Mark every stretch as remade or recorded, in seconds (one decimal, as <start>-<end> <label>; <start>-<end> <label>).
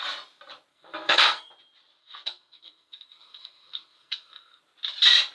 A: 0.0-0.7 recorded; 0.7-1.5 remade; 1.5-2.0 recorded; 2.0-4.6 remade; 4.6-5.3 recorded